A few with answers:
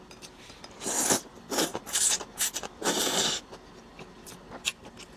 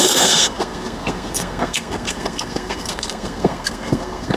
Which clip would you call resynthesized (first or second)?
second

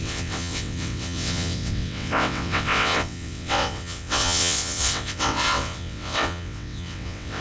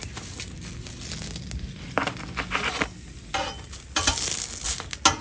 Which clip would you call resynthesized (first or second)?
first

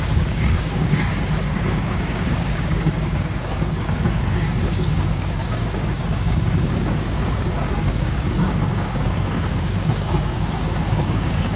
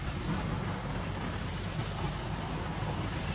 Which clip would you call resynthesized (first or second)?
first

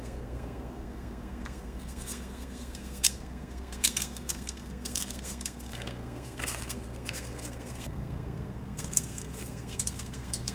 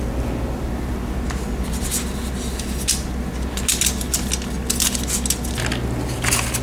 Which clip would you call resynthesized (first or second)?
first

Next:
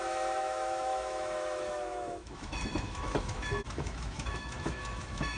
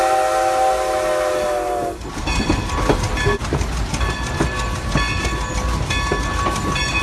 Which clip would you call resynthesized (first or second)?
first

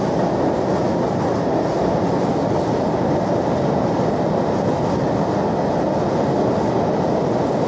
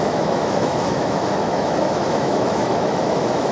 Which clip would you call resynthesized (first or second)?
second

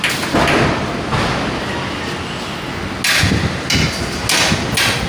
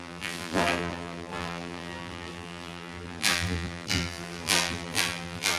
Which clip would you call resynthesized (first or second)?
second